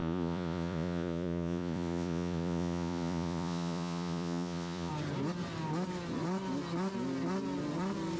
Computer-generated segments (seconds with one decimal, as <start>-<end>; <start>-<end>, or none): 0.0-4.9